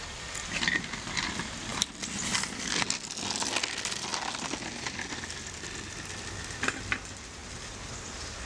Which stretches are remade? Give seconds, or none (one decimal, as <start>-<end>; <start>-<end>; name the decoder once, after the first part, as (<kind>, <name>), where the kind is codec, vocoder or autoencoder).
none